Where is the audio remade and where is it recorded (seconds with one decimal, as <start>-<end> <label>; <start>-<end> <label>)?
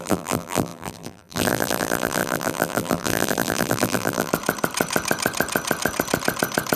0.0-4.3 remade; 4.3-6.8 recorded